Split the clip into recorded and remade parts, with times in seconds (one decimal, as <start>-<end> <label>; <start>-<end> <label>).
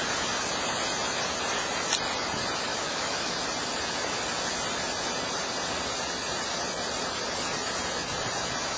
0.0-2.7 recorded; 2.7-3.3 remade; 3.3-8.8 recorded